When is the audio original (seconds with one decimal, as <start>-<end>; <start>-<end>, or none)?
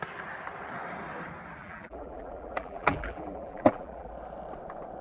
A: 0.0-1.6; 4.1-5.0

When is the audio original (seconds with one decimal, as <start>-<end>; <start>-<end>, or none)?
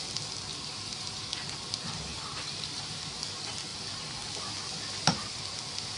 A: 0.0-0.5; 1.4-2.1; 3.1-6.0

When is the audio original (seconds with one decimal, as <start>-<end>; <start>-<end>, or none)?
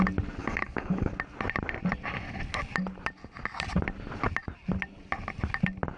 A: 0.0-0.4; 1.1-6.0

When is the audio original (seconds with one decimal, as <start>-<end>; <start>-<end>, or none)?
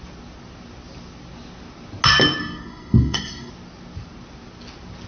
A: 0.0-2.4; 3.5-5.1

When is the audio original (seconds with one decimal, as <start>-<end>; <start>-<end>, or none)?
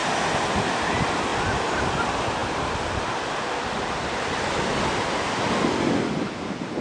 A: 0.0-6.8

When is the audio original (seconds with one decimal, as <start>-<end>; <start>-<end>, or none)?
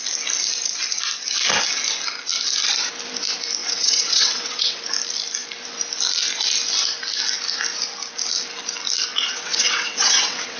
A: 0.0-3.6; 4.8-9.1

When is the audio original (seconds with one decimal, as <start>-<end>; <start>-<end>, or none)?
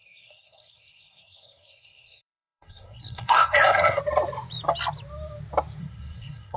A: 4.0-5.8